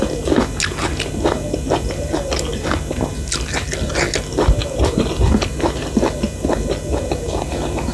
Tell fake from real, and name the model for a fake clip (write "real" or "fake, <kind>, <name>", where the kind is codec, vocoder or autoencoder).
real